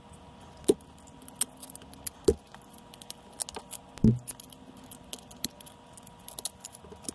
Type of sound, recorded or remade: recorded